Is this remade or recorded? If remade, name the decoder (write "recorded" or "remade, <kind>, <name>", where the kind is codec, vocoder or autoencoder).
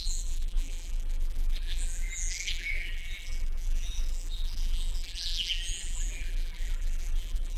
remade, vocoder, BigVGAN v2